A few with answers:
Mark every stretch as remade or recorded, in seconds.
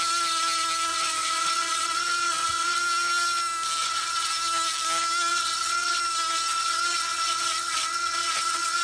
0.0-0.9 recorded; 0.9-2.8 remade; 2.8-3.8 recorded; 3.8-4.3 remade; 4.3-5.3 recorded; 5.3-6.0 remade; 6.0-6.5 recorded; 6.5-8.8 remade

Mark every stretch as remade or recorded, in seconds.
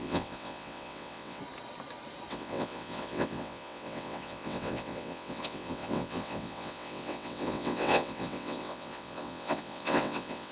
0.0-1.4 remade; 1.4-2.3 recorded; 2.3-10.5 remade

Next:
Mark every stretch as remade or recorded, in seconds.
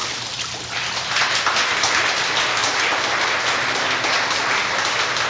0.0-5.3 recorded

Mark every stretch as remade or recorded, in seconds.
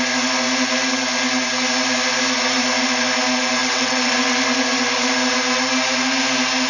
0.0-3.6 recorded; 3.6-4.2 remade; 4.2-6.7 recorded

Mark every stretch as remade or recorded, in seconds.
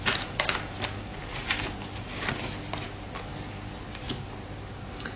0.0-5.2 recorded